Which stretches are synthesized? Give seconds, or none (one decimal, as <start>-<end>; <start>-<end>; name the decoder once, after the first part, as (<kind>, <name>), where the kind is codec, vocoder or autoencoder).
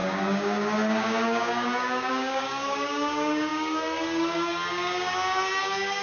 0.0-6.0 (codec, DAC)